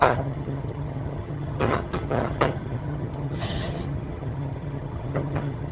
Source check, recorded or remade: remade